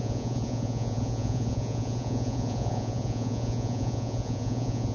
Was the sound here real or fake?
fake